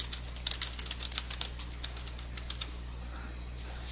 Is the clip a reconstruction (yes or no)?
no